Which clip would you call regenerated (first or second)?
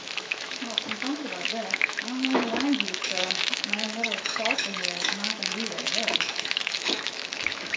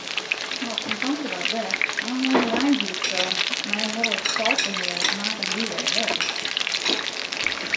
first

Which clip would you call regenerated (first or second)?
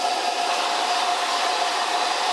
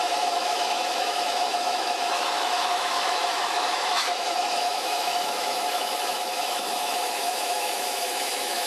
second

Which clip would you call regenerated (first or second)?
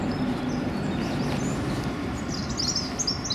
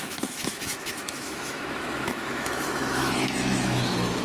second